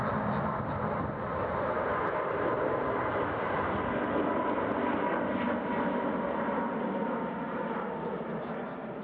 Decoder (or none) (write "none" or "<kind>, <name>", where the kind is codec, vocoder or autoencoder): none